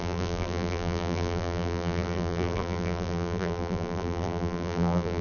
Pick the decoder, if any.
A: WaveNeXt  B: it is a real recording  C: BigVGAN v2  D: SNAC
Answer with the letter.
C